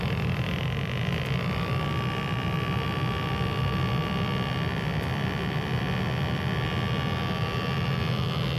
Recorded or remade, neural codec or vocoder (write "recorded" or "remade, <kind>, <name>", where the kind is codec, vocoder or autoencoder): recorded